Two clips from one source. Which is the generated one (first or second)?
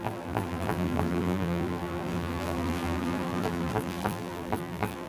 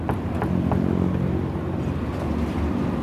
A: first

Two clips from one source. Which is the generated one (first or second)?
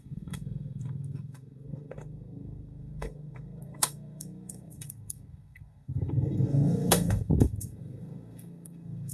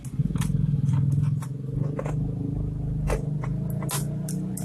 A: first